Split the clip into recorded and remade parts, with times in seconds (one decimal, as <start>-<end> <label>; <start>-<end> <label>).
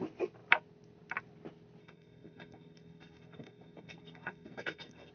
0.0-1.8 recorded; 1.8-5.1 remade